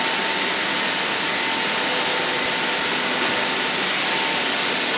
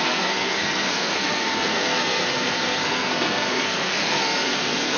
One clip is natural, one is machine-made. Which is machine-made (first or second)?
second